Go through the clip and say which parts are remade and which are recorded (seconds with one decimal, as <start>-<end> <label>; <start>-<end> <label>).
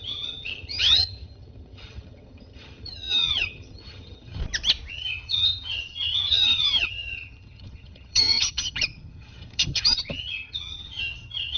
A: 0.0-4.4 remade; 4.4-4.9 recorded; 4.9-11.6 remade